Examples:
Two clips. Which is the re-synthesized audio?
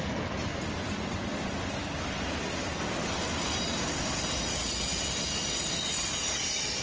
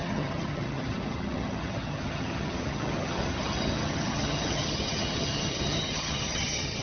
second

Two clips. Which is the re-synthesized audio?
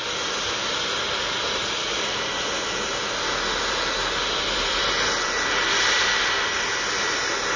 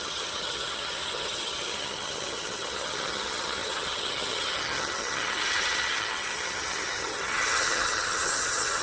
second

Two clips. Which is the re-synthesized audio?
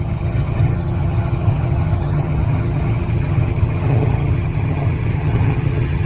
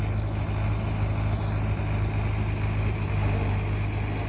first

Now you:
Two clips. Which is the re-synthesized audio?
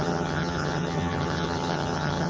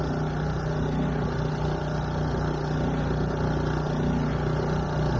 first